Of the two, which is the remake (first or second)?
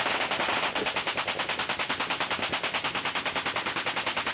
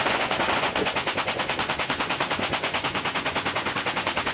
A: second